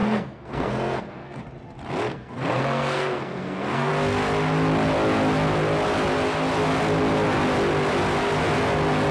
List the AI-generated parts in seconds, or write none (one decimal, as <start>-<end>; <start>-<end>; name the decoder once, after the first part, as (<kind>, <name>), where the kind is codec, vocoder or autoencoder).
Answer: 0.0-1.4 (codec, SNAC); 2.1-3.9